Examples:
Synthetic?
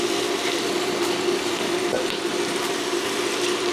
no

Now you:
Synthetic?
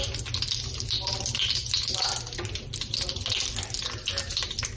no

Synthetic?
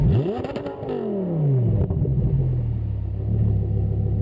no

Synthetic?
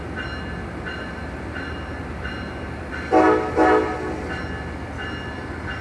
no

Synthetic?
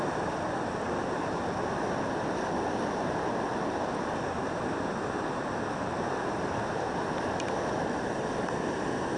no